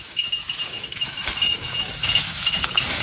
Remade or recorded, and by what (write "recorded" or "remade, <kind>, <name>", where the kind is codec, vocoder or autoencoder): remade, autoencoder, DAC-VAE